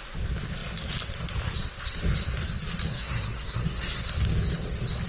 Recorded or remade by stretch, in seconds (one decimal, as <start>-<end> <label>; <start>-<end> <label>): 0.0-2.9 recorded; 2.9-4.0 remade; 4.0-5.1 recorded